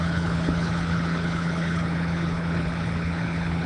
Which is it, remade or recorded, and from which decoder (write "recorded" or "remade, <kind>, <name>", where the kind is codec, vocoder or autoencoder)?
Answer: remade, codec, HILCodec